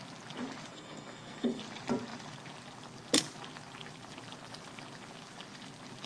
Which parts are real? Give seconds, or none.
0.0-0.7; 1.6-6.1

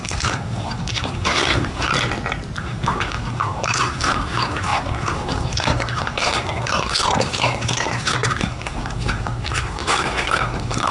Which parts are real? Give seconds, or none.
1.9-2.6

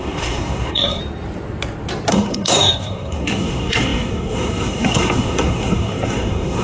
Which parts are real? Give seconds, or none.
1.0-2.1

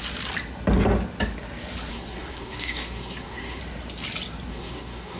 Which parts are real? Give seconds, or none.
0.0-1.9; 3.6-4.5